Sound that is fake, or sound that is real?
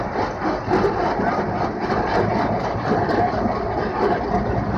real